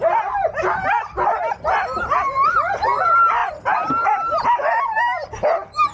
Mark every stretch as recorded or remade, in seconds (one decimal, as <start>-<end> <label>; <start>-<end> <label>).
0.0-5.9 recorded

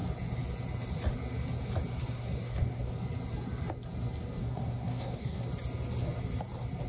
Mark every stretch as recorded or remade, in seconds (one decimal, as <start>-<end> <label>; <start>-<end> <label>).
0.0-2.0 recorded; 2.0-2.9 remade; 2.9-4.4 recorded; 4.4-5.5 remade; 5.5-6.9 recorded

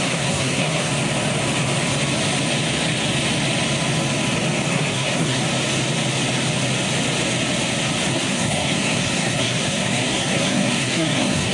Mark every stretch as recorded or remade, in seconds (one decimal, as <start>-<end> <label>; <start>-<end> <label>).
0.0-0.9 remade; 0.9-4.7 recorded; 4.7-5.4 remade; 5.4-8.1 recorded; 8.1-11.5 remade

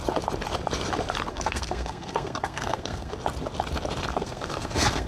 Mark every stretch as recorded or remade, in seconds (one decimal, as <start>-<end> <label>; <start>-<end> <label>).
0.0-1.3 recorded; 1.3-3.1 remade; 3.1-4.1 recorded; 4.1-5.1 remade

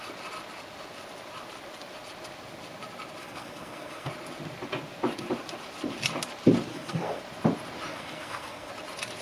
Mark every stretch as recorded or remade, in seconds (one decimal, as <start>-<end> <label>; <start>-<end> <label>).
0.0-3.2 recorded; 3.2-4.1 remade; 4.1-6.7 recorded; 6.7-7.2 remade; 7.2-7.9 recorded; 7.9-8.7 remade; 8.7-9.2 recorded